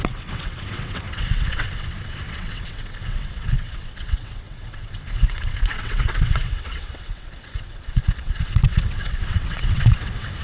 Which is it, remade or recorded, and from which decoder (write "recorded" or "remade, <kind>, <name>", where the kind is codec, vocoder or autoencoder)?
remade, vocoder, WaveNeXt